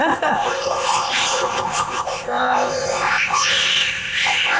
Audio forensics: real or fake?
fake